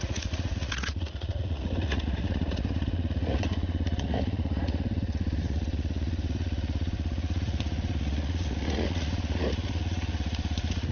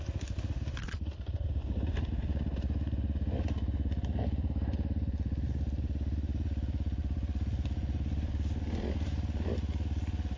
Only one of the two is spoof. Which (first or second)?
first